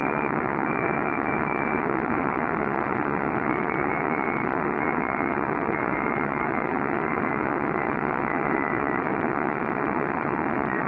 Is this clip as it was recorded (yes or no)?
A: no